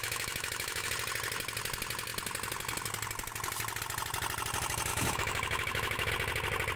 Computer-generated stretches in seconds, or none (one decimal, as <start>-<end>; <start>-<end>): 0.0-0.9; 4.9-6.1